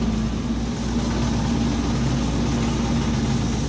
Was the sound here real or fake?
real